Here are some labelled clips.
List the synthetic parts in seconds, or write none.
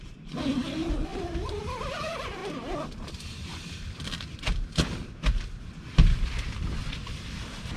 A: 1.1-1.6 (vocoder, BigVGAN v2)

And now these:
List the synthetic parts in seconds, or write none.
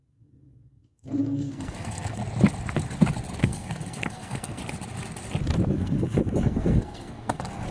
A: 0.0-2.2 (codec, SNAC); 3.4-4.6; 5.7-7.7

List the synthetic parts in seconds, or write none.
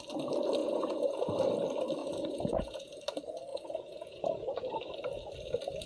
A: 0.6-1.3 (vocoder, Vocos); 2.0-3.0; 3.5-4.7